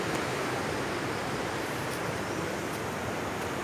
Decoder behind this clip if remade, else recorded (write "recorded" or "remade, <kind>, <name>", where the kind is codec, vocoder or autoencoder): recorded